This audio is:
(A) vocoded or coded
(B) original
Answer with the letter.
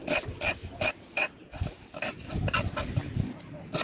B